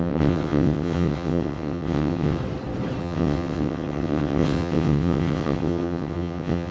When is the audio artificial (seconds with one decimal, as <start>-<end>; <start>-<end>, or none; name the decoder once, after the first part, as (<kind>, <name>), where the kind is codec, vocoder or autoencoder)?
0.0-2.4 (vocoder, WaveNeXt); 3.0-6.7